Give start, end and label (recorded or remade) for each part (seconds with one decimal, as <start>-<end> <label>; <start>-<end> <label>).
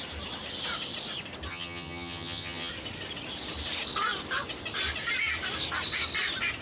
0.0-1.5 recorded; 1.5-2.7 remade; 2.7-6.6 recorded